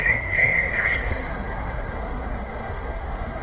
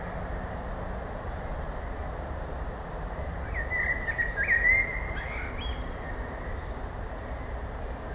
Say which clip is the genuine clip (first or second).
second